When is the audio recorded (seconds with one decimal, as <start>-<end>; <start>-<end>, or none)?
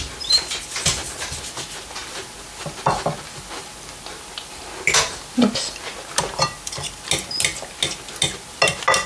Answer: 0.0-9.1